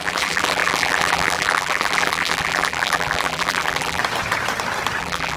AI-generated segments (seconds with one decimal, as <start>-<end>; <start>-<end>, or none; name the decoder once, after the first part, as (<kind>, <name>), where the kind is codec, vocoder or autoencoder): 0.0-4.0 (vocoder, BigVGAN v2); 5.0-5.4